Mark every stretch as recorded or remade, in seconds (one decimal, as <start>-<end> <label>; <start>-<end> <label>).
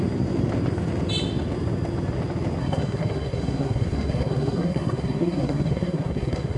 0.0-2.6 recorded; 2.6-6.6 remade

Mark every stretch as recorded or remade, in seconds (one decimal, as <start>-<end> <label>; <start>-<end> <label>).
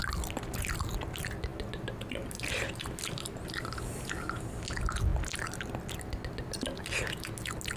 0.0-7.8 recorded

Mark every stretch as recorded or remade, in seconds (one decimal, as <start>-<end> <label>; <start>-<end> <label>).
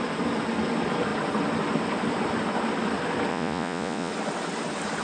0.0-3.3 recorded; 3.3-4.1 remade; 4.1-5.0 recorded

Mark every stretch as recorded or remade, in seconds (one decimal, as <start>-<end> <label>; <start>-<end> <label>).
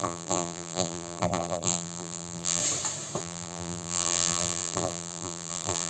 0.0-2.6 remade; 2.6-3.2 recorded; 3.2-5.9 remade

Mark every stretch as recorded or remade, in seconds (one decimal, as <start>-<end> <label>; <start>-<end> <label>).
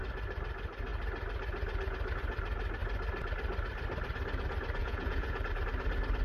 0.0-4.8 recorded; 4.8-5.4 remade; 5.4-6.2 recorded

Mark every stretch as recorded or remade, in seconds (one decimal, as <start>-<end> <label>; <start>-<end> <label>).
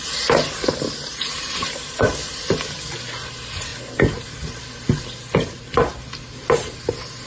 0.0-1.1 recorded; 1.1-2.1 remade; 2.1-7.3 recorded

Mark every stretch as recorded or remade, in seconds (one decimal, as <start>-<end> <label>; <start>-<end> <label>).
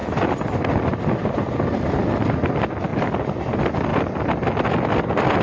0.0-5.4 recorded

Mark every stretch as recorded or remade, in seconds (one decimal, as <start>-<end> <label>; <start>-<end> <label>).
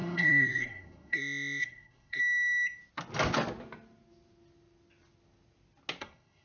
0.0-2.2 remade; 2.2-6.0 recorded; 6.0-6.4 remade